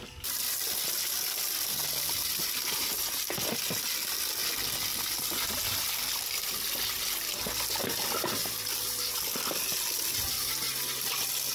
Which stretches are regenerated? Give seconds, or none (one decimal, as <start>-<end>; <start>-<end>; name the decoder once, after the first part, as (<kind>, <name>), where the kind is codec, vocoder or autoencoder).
none